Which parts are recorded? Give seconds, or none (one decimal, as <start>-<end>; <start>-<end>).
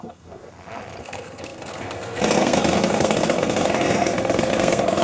0.4-1.0